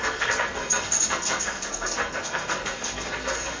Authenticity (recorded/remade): remade